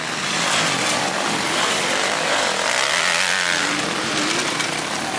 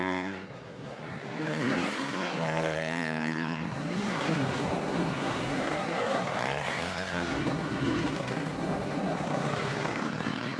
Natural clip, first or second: first